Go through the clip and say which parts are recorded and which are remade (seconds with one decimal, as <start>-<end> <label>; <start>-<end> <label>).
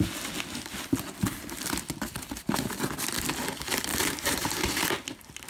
0.0-3.9 recorded; 3.9-4.9 remade; 4.9-5.5 recorded